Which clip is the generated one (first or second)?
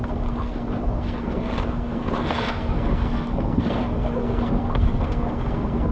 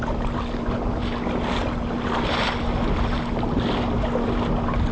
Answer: first